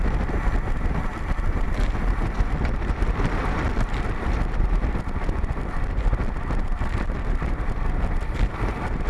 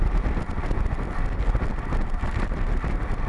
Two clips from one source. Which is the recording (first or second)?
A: second